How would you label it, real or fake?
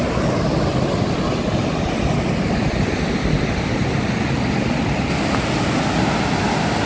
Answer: real